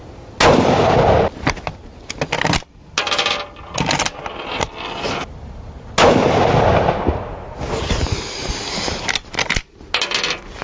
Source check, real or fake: real